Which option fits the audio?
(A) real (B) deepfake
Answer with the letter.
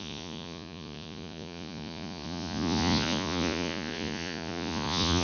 B